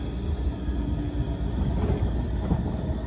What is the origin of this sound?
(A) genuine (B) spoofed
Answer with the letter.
A